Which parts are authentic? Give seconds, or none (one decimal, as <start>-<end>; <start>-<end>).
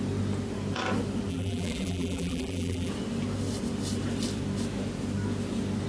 0.0-1.3; 2.9-5.9